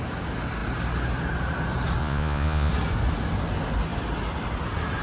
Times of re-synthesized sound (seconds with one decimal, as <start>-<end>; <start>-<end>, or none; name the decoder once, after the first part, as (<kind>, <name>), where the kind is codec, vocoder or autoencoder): 2.0-2.7 (vocoder, Vocos)

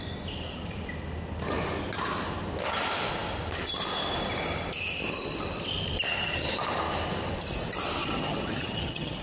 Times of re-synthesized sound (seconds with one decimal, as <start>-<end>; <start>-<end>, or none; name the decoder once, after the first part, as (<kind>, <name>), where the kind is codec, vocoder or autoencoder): 8.0-9.2 (vocoder, HiFi-GAN)

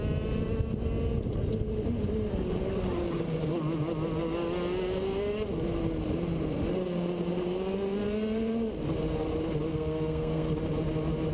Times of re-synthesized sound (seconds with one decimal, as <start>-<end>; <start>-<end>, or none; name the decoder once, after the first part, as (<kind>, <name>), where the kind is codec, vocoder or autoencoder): 9.7-10.5 (codec, SNAC)

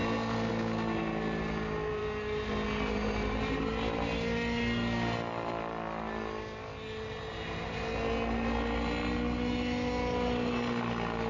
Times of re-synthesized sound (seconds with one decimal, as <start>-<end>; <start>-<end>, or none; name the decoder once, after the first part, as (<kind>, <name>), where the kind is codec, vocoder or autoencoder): none

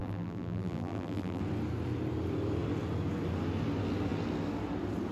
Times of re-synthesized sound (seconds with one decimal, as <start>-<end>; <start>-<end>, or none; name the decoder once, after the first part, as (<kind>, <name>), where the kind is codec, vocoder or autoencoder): 0.0-1.4 (vocoder, BigVGAN v2)